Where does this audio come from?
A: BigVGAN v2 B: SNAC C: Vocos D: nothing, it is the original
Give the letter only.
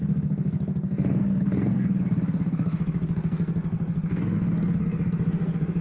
B